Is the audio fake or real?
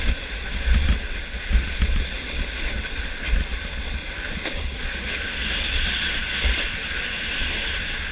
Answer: real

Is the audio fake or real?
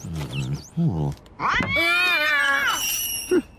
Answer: real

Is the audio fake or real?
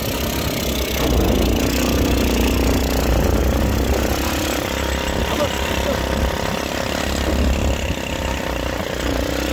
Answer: real